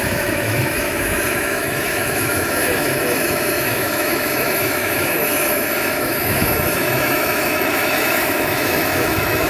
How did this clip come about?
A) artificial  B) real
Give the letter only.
A